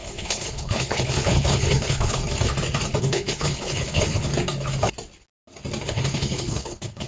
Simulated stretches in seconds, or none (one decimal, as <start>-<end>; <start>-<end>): 0.0-2.2; 3.0-4.3; 5.8-7.1